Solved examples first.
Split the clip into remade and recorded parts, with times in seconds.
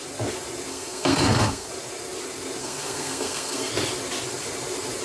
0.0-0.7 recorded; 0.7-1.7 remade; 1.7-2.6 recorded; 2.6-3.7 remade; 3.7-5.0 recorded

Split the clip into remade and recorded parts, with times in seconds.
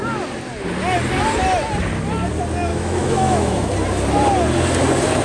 0.0-2.7 recorded; 2.7-3.7 remade; 3.7-5.2 recorded